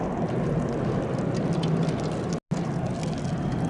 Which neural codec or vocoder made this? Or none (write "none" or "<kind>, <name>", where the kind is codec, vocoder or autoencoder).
none